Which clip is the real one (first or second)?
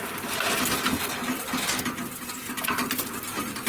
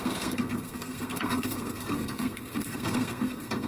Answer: first